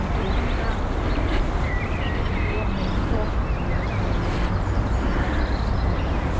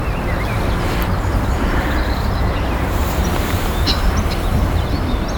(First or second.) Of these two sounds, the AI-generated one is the second